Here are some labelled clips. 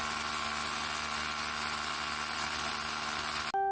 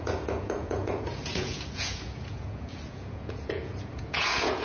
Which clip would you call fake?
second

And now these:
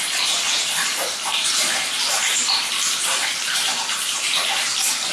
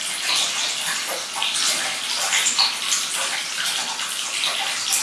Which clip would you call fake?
first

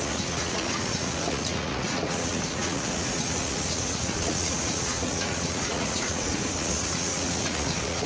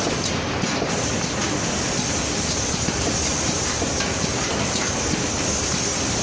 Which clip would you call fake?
first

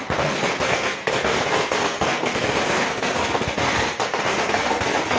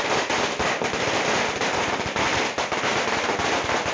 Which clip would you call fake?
first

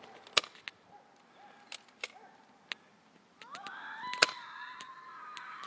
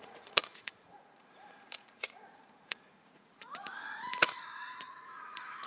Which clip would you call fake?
second